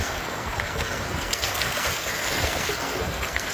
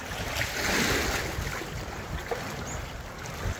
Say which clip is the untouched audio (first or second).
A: second